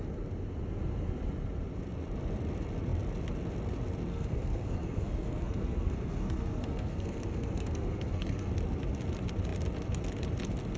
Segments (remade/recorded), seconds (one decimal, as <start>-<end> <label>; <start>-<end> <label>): 0.0-4.1 recorded; 4.1-8.5 remade; 8.5-10.8 recorded